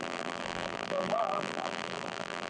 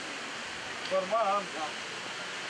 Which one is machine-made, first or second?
first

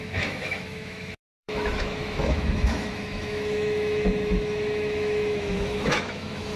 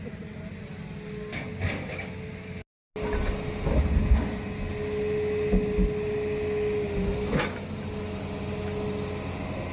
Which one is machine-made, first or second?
first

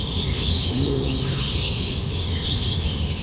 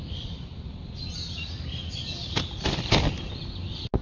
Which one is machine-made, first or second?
first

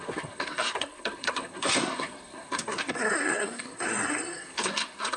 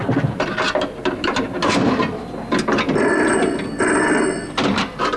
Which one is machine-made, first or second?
first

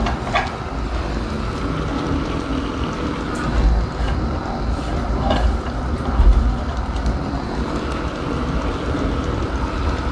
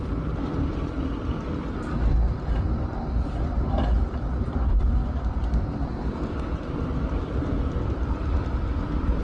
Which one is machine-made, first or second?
second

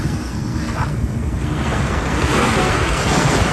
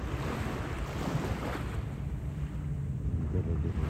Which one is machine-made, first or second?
first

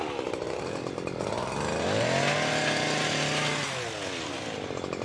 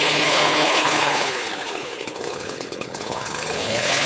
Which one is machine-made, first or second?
second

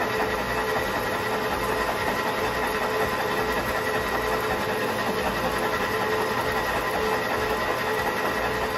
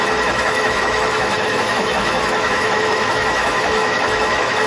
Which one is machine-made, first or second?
second